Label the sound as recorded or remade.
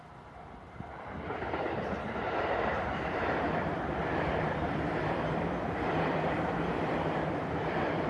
remade